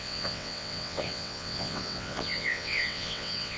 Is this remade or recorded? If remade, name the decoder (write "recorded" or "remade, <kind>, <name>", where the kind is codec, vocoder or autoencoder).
remade, vocoder, WaveNeXt